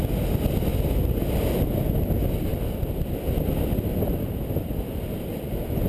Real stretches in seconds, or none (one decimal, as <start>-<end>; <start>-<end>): 0.0-5.9